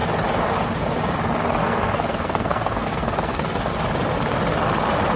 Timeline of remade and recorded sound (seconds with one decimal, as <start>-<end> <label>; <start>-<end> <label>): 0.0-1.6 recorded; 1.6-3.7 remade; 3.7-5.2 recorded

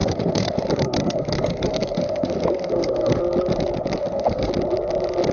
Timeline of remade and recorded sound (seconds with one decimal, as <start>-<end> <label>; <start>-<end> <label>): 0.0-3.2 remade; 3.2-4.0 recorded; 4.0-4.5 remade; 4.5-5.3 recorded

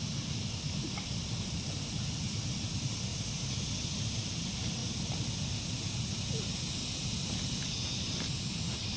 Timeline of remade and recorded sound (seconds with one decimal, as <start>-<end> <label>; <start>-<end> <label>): 0.0-9.0 recorded

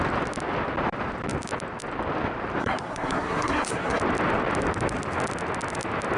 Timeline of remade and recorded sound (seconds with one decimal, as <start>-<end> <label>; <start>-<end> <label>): 0.0-2.6 recorded; 2.6-4.0 remade; 4.0-6.2 recorded

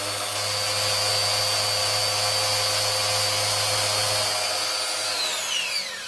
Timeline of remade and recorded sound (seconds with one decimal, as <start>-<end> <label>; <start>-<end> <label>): 0.0-6.1 recorded

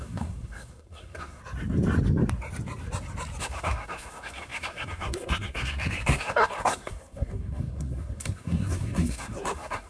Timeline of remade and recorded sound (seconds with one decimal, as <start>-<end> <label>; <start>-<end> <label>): 0.0-1.4 remade; 1.4-3.4 recorded; 3.4-9.9 remade

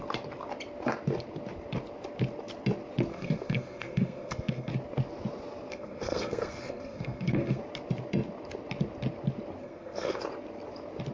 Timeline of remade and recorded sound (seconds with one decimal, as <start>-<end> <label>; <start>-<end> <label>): 0.0-3.1 recorded; 3.1-4.7 remade; 4.7-5.7 recorded; 5.7-7.6 remade; 7.6-9.6 recorded; 9.6-10.2 remade; 10.2-11.1 recorded

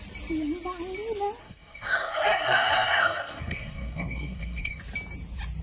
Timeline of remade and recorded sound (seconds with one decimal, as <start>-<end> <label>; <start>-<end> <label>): 0.0-1.4 recorded; 1.4-4.8 remade; 4.8-5.6 recorded